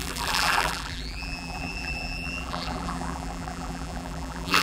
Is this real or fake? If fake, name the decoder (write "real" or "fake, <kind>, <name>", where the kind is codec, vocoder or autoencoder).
fake, vocoder, BigVGAN v2